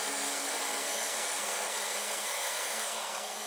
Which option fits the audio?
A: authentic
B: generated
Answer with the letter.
B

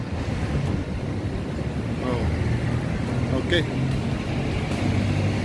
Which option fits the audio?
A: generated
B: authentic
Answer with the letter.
B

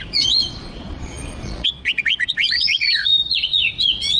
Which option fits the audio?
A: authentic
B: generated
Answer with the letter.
B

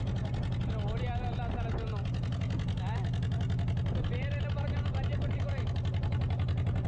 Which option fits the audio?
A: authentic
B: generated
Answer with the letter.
A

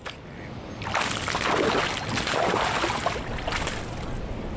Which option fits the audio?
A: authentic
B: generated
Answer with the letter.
A